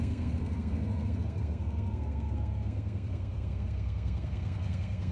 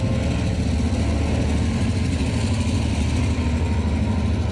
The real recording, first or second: second